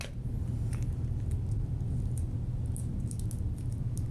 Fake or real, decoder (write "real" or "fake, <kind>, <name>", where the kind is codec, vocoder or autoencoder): real